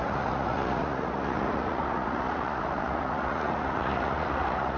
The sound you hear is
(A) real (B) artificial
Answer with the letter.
B